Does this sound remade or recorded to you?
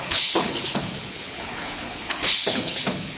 remade